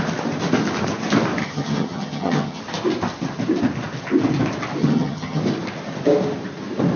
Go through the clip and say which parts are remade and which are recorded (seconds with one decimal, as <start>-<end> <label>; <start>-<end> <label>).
0.0-1.4 recorded; 1.4-2.6 remade; 2.6-4.8 recorded; 4.8-5.4 remade; 5.4-7.0 recorded